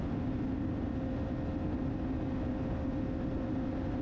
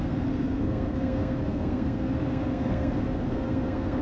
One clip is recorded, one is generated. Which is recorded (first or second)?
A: first